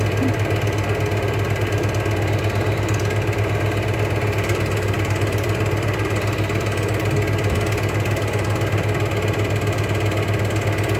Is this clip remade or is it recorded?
recorded